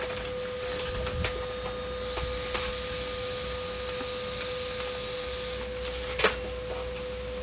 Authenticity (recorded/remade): recorded